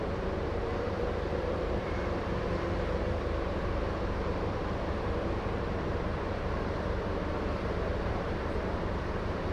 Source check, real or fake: fake